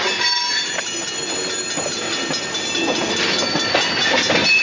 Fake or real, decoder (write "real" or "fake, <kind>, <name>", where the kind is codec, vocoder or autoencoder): real